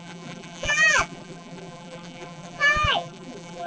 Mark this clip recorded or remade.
remade